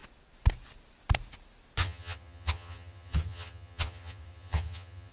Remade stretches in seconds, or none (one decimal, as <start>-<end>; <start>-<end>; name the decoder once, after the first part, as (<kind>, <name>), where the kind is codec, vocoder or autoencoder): 1.8-5.1 (vocoder, HiFi-GAN)